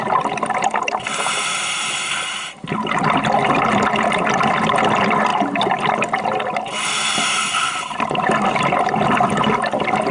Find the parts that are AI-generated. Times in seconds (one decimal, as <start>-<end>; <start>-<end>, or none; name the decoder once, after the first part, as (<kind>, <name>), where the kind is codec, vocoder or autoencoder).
none